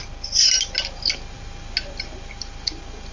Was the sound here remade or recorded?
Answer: recorded